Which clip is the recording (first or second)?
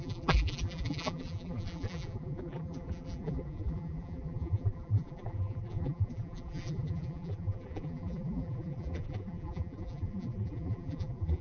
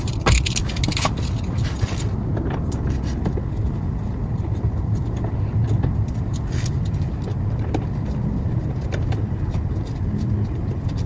second